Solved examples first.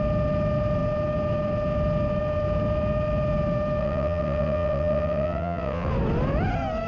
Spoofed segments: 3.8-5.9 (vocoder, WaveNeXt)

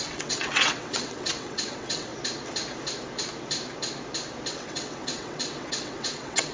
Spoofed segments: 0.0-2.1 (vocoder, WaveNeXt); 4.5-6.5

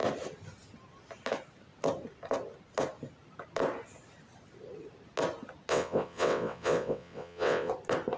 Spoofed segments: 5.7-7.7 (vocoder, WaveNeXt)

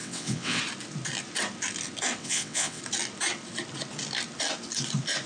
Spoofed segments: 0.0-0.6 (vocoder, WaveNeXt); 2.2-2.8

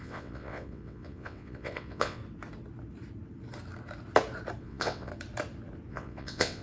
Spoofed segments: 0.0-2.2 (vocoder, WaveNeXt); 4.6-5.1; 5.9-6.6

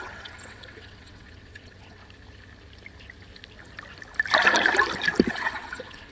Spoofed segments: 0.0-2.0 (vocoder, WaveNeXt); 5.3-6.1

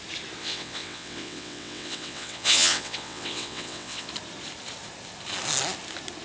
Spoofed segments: 0.4-4.1 (vocoder, WaveNeXt)